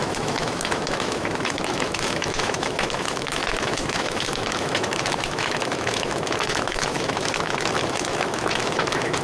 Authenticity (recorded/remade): remade